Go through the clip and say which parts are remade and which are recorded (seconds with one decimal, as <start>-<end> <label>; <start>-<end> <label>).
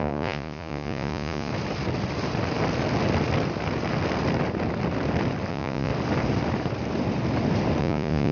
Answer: 0.0-1.5 remade; 1.5-5.5 recorded; 5.5-5.9 remade; 5.9-7.8 recorded; 7.8-8.3 remade